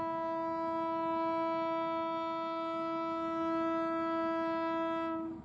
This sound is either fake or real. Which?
real